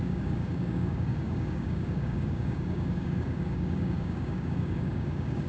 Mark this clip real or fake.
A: fake